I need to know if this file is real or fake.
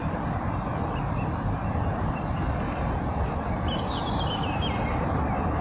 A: real